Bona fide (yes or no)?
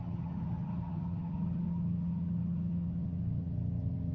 no